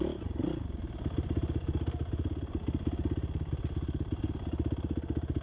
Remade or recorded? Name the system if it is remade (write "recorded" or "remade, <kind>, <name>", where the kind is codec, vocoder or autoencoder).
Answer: recorded